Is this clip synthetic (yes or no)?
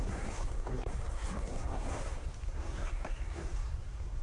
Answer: yes